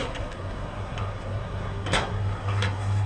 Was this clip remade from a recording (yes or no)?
yes